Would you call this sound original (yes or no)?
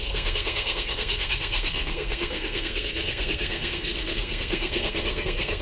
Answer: no